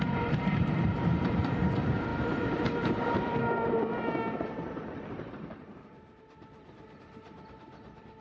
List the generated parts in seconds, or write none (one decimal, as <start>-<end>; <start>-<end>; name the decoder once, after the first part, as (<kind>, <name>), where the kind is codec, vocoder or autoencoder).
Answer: 0.0-8.2 (vocoder, BigVGAN v2)